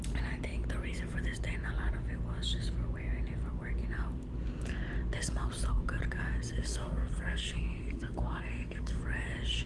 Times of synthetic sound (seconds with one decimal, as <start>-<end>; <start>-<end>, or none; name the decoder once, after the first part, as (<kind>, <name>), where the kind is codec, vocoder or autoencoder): 6.6-9.0 (codec, SNAC)